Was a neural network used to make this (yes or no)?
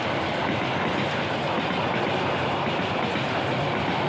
no